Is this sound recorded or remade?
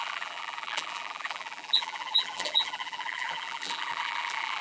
remade